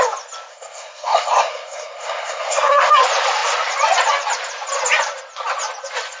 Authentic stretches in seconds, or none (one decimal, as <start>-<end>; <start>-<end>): 0.0-0.5; 2.9-6.2